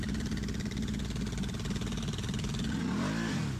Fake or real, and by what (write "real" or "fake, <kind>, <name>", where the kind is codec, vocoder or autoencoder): real